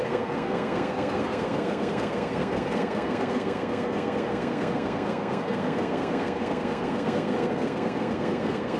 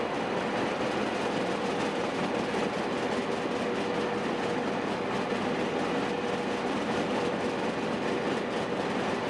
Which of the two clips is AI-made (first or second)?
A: first